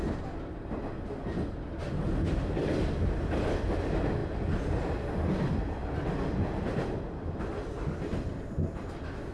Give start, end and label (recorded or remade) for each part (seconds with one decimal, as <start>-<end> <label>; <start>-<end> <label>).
0.0-9.3 recorded